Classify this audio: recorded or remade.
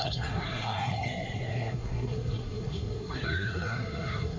remade